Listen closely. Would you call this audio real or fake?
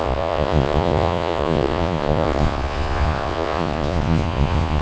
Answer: fake